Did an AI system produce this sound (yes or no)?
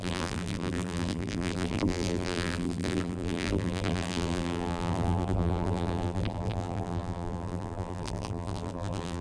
yes